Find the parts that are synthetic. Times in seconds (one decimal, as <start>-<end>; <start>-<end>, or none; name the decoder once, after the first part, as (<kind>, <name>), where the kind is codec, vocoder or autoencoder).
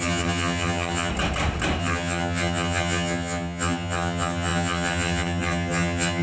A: 0.0-1.1 (vocoder, HiFi-GAN); 1.8-6.2